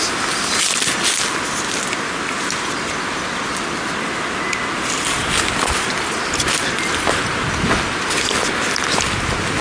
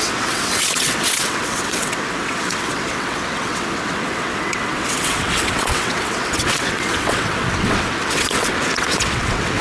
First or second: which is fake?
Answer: second